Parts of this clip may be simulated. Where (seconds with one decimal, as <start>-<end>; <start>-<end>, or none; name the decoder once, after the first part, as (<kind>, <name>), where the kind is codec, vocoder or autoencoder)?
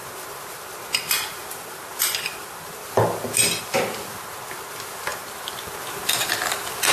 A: none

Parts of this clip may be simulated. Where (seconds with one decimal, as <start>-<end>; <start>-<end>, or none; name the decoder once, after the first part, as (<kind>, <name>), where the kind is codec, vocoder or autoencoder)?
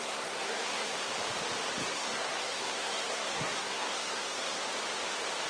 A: 0.0-1.1 (codec, SNAC); 1.8-4.6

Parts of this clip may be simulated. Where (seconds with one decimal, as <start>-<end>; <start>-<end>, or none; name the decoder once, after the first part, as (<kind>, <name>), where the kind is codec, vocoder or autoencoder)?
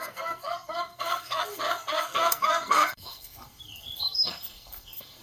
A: 0.0-5.2 (codec, SNAC)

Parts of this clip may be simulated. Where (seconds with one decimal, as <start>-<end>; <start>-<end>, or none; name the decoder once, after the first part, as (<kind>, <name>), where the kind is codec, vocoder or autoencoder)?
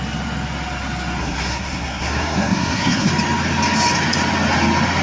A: 1.2-3.1 (codec, SNAC)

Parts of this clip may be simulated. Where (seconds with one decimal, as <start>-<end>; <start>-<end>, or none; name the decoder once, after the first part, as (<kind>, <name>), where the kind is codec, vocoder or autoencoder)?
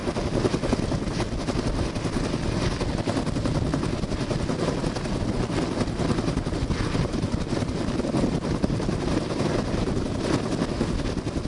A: none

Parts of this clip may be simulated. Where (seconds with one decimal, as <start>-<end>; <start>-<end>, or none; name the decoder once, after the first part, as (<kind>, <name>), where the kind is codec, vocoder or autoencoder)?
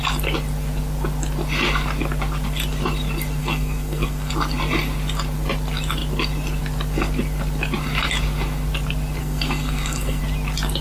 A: 3.4-4.3 (codec, SNAC); 9.2-10.2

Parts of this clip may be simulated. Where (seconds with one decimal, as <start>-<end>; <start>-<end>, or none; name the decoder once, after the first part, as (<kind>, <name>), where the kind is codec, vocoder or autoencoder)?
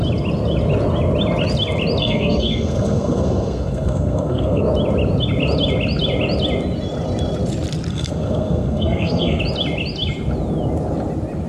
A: 2.0-4.6 (codec, SNAC); 7.9-9.4